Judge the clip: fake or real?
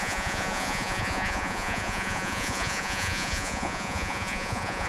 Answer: fake